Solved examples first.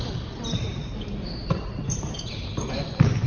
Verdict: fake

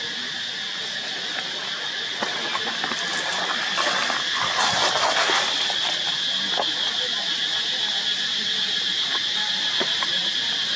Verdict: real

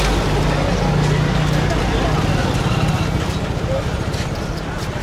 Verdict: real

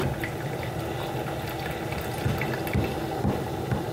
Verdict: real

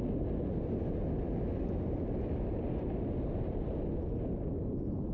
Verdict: real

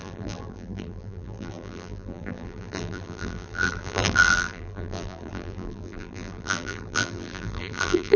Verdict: fake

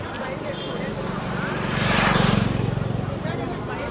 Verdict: fake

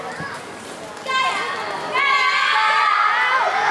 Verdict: real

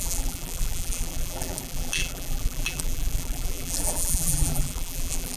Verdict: fake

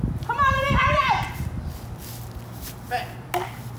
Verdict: real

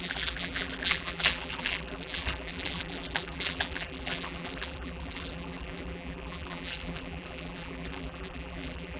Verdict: fake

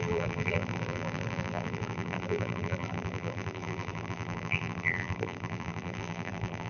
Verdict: fake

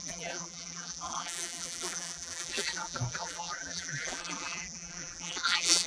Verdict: fake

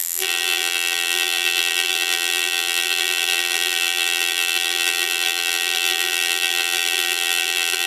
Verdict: fake